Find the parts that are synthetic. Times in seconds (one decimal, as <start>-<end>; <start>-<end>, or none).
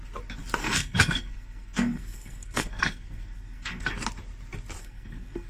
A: 0.6-3.9; 4.8-5.5